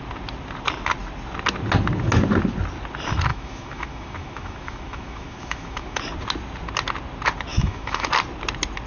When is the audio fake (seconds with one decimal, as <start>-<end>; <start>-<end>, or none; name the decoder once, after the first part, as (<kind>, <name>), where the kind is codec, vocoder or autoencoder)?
3.3-6.0 (autoencoder, DAC-VAE); 7.5-8.1